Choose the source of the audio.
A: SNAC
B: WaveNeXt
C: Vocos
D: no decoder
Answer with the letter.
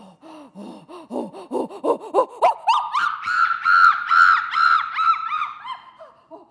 D